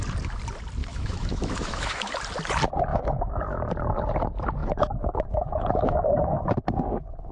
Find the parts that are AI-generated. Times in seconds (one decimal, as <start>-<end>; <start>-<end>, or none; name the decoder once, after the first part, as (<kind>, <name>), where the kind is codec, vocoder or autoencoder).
0.8-2.1 (autoencoder, DAC-VAE); 2.9-3.4; 4.6-6.4